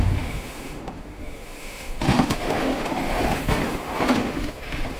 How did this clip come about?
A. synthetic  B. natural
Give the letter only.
A